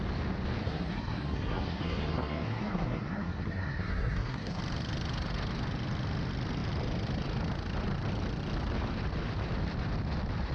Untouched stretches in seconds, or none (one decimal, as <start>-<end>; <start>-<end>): 0.0-0.6; 4.6-10.5

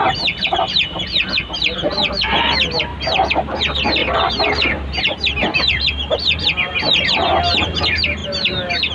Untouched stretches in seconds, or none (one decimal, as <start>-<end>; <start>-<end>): 0.0-2.9; 3.6-4.0; 5.0-8.9